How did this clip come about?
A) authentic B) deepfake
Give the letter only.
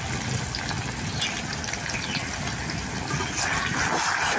A